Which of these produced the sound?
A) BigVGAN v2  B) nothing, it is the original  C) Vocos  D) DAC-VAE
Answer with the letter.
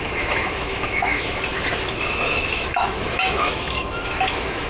D